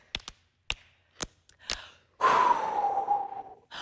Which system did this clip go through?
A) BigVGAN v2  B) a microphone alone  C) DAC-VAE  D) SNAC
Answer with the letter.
B